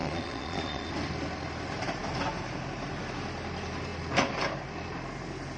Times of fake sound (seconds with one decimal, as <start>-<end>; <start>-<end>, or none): 0.0-0.9